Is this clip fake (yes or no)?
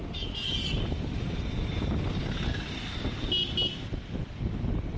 no